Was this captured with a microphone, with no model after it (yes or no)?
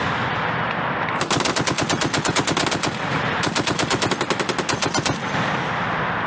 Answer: yes